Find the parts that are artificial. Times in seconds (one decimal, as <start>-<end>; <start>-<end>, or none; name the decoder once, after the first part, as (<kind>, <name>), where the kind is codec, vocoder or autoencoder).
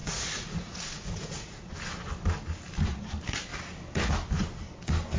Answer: 0.0-1.7 (vocoder, Vocos)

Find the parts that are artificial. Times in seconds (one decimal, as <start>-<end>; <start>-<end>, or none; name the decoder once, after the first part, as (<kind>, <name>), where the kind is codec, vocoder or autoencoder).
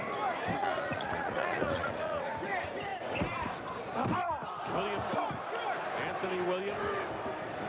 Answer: 0.6-2.3 (vocoder, Vocos)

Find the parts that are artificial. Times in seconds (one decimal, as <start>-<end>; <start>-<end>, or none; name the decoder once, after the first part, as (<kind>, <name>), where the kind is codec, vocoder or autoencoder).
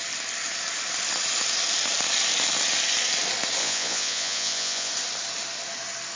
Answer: 3.6-4.9 (vocoder, Vocos)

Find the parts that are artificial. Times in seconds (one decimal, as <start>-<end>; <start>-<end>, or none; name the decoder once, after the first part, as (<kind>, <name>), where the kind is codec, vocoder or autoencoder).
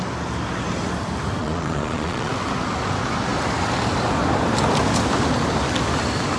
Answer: 1.4-2.3 (vocoder, Vocos)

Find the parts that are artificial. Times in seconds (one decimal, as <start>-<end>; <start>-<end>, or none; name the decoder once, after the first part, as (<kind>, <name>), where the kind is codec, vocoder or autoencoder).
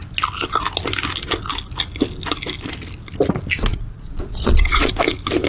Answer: 3.7-4.9 (vocoder, Vocos)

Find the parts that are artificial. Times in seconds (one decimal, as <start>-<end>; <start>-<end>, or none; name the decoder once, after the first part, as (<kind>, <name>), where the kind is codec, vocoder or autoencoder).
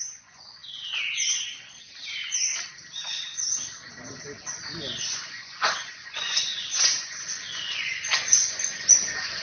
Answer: 0.0-0.6 (vocoder, Vocos); 5.1-9.4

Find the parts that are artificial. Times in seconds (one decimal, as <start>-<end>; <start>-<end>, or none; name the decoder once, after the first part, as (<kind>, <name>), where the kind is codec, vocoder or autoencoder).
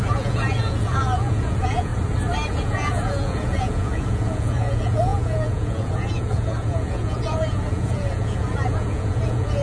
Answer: 0.0-1.9 (vocoder, Vocos); 2.5-9.6